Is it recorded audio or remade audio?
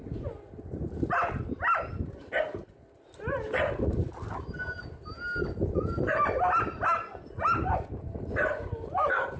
recorded